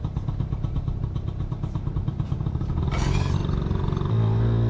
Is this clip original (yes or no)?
yes